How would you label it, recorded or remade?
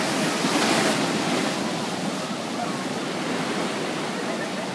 recorded